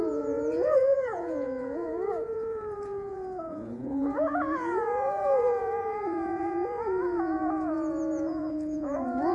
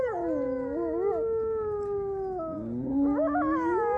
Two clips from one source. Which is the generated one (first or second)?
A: first